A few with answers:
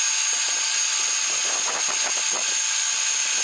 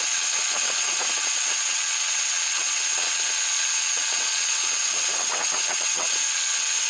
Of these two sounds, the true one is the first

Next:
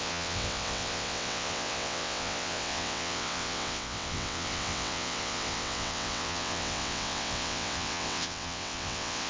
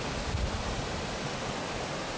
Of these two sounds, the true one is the second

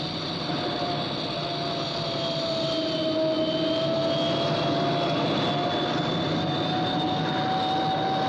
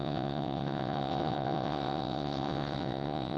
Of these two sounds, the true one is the first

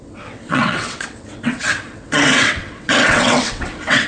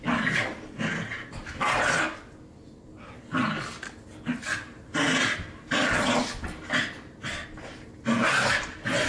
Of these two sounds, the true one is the second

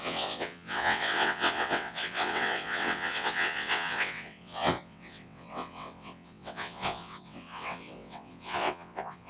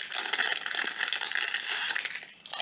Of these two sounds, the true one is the second